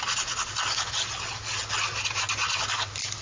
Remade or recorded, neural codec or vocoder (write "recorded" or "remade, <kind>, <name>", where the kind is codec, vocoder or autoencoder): recorded